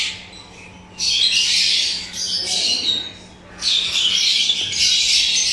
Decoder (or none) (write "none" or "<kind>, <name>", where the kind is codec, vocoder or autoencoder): none